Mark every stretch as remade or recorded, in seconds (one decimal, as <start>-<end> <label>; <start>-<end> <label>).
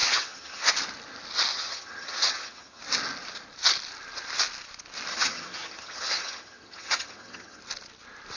0.0-0.7 remade; 0.7-1.5 recorded; 1.5-2.8 remade; 2.8-5.1 recorded; 5.1-7.6 remade; 7.6-8.4 recorded